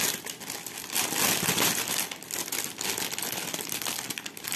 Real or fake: real